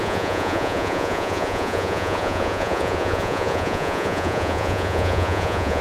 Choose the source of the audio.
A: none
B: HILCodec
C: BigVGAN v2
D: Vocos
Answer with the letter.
D